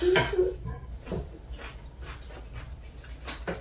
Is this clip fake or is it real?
real